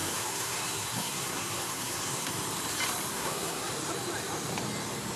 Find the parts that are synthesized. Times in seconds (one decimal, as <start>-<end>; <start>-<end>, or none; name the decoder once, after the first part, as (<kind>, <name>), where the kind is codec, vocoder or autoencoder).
0.0-2.3 (codec, SNAC); 3.1-3.7